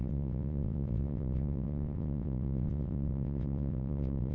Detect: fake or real fake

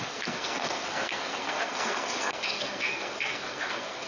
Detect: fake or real fake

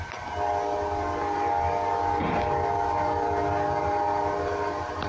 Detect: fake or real real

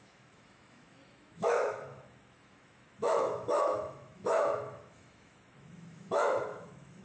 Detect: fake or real fake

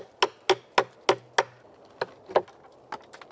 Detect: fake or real real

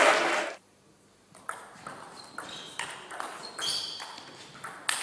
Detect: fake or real real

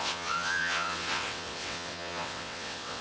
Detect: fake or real fake